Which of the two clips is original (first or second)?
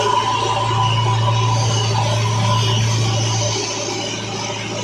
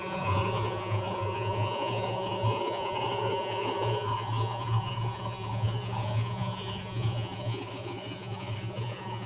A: first